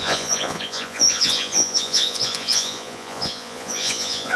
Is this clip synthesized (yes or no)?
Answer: yes